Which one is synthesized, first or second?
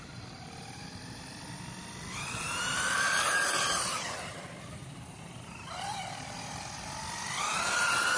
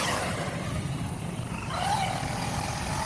second